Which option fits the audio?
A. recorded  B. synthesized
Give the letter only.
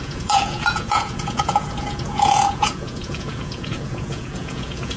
B